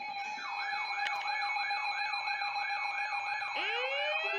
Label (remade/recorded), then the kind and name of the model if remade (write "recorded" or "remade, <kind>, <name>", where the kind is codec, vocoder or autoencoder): recorded